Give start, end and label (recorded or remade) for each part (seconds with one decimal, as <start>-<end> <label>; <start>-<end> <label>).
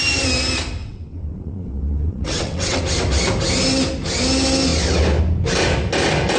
0.0-0.8 recorded; 0.8-2.8 remade; 2.8-6.4 recorded